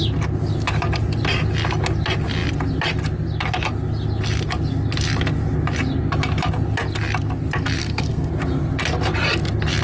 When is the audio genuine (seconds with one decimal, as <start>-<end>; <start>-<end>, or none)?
0.0-7.8; 8.3-9.8

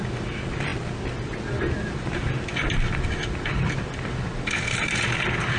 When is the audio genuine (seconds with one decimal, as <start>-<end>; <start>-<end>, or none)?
0.0-5.6

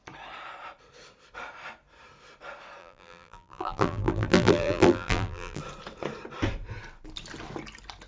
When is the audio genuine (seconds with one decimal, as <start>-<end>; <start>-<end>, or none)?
0.0-2.8; 5.6-8.1

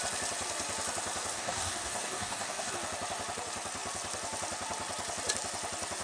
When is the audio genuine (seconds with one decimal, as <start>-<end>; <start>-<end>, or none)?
0.0-1.3; 2.7-6.0

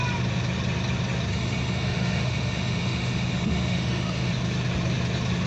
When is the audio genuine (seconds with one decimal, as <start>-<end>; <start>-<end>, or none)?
0.0-1.3; 4.3-5.5

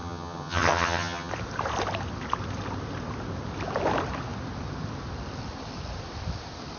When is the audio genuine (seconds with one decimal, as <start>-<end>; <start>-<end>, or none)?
1.3-6.8

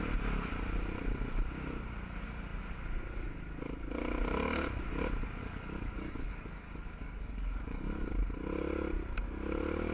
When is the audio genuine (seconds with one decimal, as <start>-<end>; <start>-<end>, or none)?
0.0-5.4; 8.1-9.9

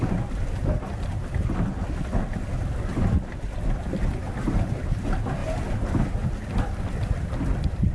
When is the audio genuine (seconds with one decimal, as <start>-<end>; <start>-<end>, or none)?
0.0-7.9